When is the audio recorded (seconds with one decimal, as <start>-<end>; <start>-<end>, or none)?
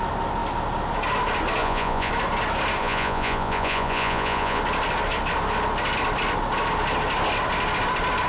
0.0-1.6; 2.1-2.8; 4.6-8.3